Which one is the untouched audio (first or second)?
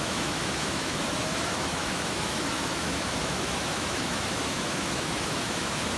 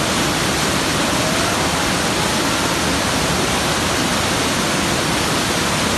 second